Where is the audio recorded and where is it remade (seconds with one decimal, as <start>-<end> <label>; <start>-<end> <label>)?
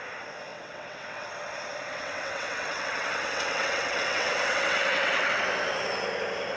0.0-0.5 recorded; 0.5-1.3 remade; 1.3-1.9 recorded; 1.9-5.4 remade; 5.4-6.6 recorded